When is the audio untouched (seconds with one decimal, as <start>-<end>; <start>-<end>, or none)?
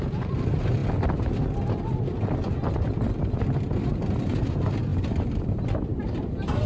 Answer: 0.0-6.7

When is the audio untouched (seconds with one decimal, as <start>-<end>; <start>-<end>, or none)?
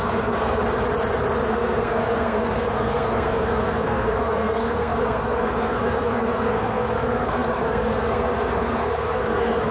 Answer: 0.6-1.5